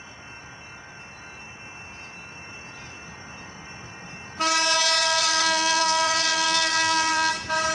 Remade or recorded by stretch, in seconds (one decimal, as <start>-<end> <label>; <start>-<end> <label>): 0.0-5.0 recorded; 5.0-7.3 remade; 7.3-7.7 recorded